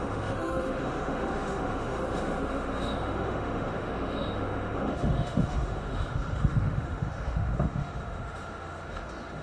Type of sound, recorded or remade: remade